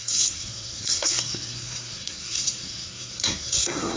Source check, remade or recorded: remade